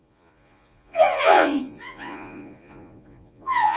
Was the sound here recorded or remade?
remade